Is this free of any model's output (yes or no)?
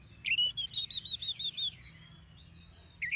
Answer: yes